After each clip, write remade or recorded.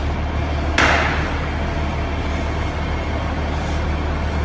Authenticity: recorded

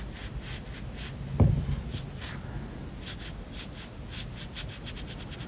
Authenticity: recorded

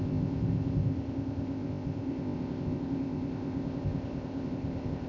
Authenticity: remade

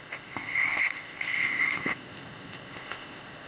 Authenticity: remade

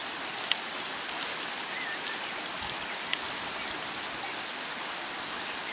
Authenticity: recorded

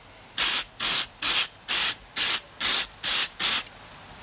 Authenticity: recorded